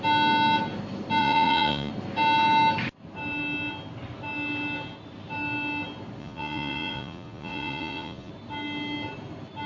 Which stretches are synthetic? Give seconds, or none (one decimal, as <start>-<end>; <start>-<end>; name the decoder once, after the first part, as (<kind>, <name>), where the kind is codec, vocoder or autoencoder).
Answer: 1.2-1.9 (vocoder, Vocos); 6.2-8.3